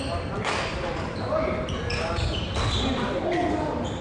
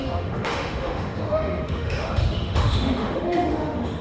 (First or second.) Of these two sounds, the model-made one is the second